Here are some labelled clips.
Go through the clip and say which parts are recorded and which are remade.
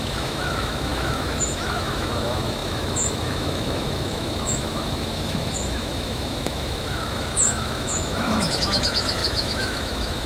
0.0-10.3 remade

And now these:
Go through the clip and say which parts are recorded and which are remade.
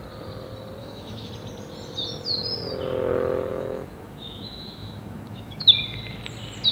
0.0-0.8 recorded; 0.8-1.3 remade; 1.3-3.5 recorded; 3.5-5.7 remade; 5.7-6.7 recorded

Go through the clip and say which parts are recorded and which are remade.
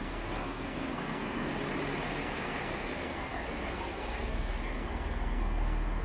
0.0-1.5 remade; 1.5-2.1 recorded; 2.1-6.0 remade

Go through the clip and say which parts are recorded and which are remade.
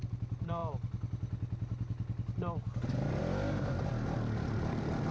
0.0-5.1 recorded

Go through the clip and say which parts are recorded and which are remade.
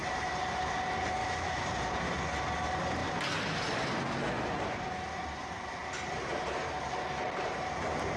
0.0-1.2 recorded; 1.2-1.7 remade; 1.7-8.2 recorded